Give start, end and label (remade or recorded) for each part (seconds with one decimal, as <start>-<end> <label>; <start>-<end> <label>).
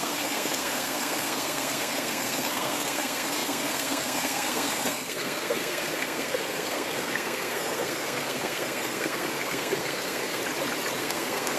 0.0-10.4 remade; 10.4-11.0 recorded; 11.0-11.6 remade